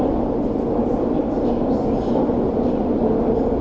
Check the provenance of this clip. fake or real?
real